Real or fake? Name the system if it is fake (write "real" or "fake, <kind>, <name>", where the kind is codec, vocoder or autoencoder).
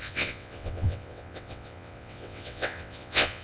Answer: fake, vocoder, WaveNeXt